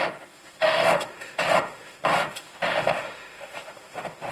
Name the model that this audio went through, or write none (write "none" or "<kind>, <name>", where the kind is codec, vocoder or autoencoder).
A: autoencoder, DAC-VAE